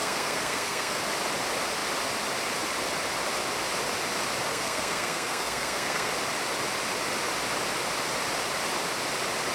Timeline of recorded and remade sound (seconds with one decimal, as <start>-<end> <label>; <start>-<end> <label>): 0.0-1.0 remade; 1.0-4.5 recorded; 4.5-6.1 remade; 6.1-9.5 recorded